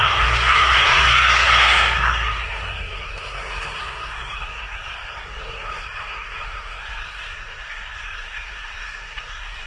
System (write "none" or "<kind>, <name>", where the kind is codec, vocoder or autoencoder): codec, SNAC